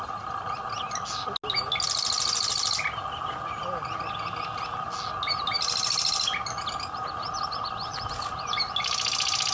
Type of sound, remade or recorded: recorded